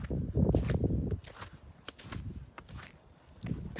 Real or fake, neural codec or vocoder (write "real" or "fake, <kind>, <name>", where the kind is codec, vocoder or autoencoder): real